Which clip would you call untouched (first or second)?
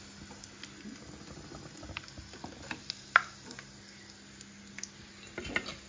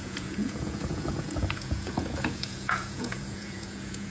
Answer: first